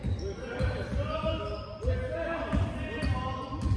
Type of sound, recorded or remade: recorded